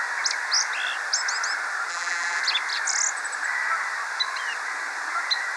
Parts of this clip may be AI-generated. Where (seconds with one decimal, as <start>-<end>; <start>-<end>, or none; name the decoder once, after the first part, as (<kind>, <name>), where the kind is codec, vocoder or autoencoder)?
1.9-2.4 (vocoder, BigVGAN v2)

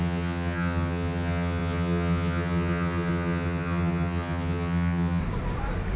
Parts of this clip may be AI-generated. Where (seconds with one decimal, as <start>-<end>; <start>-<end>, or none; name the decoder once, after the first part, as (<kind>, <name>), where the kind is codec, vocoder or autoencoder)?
0.0-5.2 (vocoder, HiFi-GAN)

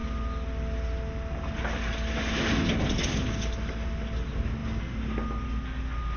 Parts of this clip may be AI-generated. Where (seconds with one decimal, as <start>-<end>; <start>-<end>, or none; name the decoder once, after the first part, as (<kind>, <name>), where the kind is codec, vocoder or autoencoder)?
none

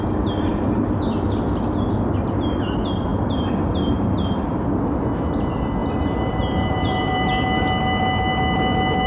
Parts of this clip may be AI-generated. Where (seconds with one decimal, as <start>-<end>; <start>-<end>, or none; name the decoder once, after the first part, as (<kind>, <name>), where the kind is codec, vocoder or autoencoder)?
3.1-3.9 (vocoder, BigVGAN v2); 5.8-7.3